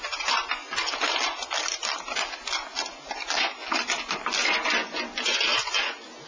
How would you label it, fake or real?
real